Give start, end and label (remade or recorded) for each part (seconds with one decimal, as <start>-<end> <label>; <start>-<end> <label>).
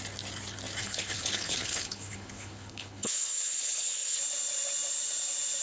0.0-0.8 recorded; 0.8-4.2 remade; 4.2-5.6 recorded